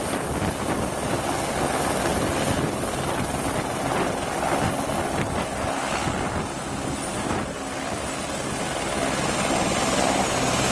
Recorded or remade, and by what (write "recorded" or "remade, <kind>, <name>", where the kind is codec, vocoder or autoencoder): recorded